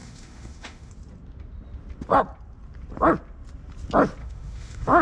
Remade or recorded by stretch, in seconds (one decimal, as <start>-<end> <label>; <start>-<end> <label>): 0.0-0.9 remade; 0.9-4.2 recorded; 4.2-5.0 remade